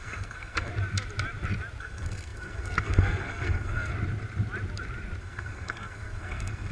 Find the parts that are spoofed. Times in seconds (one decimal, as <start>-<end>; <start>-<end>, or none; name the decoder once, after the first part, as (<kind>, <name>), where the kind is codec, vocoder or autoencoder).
0.0-0.7 (codec, SNAC); 1.8-3.9; 5.2-6.7